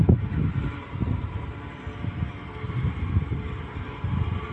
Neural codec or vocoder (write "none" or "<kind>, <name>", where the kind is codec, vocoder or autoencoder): none